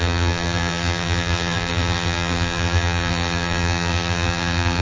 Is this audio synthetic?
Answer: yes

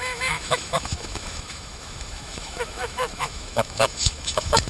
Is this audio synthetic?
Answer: yes